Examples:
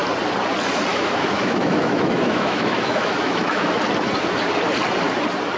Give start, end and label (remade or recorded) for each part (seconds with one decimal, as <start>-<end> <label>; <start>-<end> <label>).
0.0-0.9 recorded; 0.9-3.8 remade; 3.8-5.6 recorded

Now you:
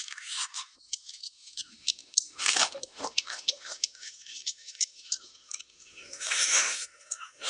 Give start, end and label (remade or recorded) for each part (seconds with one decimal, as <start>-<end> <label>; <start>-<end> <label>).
0.0-7.5 remade

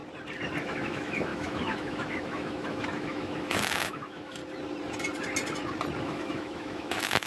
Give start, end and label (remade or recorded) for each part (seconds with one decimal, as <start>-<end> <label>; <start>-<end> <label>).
0.0-0.6 recorded; 0.6-4.4 remade; 4.4-6.0 recorded; 6.0-7.3 remade